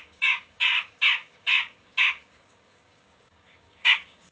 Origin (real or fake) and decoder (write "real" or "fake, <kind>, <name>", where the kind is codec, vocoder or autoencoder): fake, codec, DAC